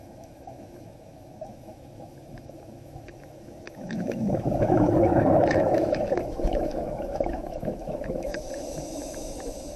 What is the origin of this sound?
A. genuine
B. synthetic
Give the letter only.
B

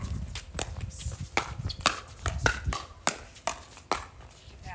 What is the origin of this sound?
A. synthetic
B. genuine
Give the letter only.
B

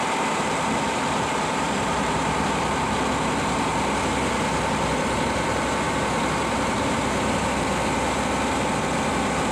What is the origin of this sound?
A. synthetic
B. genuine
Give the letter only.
B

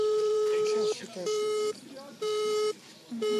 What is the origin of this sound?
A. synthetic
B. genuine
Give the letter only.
A